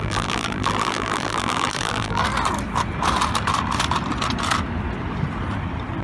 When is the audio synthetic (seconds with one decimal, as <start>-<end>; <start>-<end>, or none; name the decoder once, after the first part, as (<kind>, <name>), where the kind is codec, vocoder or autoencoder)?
0.0-2.2 (vocoder, BigVGAN v2)